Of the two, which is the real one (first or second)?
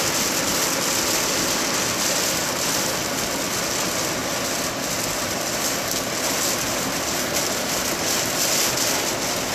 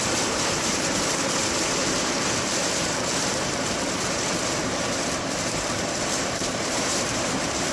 first